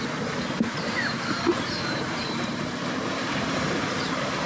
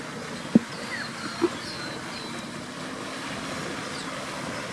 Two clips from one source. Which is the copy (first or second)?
first